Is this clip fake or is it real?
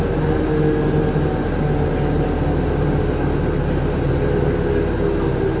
real